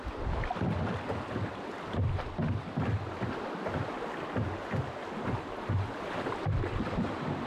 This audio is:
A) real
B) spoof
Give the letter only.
A